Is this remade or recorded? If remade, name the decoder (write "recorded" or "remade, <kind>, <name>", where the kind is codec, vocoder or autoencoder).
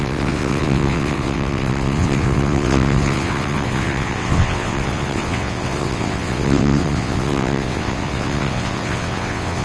remade, vocoder, WaveNeXt